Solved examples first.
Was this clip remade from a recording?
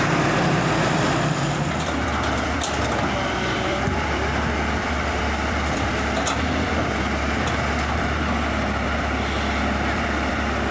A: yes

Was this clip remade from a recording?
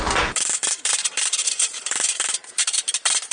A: yes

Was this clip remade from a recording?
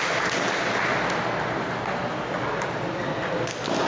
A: no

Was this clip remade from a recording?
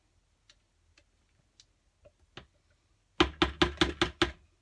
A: no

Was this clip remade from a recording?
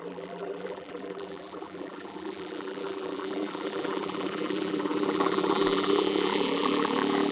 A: yes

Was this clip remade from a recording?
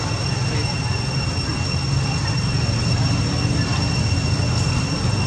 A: no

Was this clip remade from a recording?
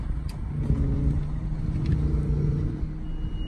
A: no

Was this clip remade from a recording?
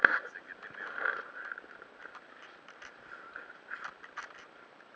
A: yes